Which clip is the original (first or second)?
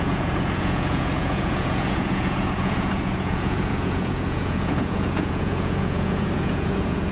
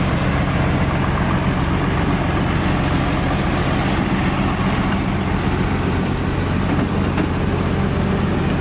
second